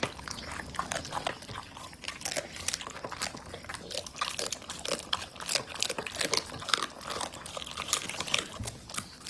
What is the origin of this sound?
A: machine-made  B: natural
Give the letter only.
B